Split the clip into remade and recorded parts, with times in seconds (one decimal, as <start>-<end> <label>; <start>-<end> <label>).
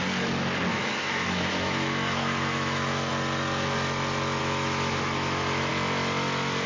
0.0-0.7 recorded; 0.7-3.1 remade; 3.1-4.4 recorded; 4.4-5.7 remade; 5.7-6.7 recorded